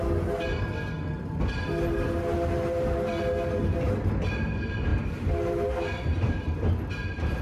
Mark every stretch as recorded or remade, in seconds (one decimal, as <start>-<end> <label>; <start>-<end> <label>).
0.0-7.4 recorded